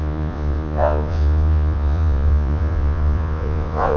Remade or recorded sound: remade